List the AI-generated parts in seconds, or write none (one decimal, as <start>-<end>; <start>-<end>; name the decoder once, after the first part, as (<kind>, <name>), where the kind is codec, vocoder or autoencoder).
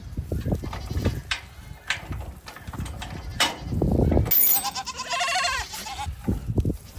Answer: none